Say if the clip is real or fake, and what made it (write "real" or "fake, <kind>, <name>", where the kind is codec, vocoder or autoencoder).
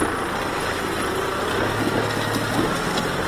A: real